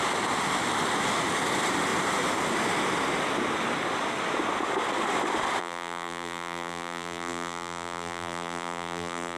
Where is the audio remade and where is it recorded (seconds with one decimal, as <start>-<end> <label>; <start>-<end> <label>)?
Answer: 0.0-5.6 recorded; 5.6-9.4 remade